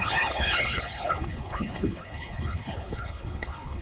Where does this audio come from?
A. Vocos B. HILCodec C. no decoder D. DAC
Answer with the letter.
B